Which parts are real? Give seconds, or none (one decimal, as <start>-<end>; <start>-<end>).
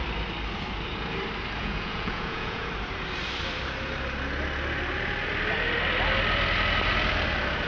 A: 0.0-1.6; 2.7-7.7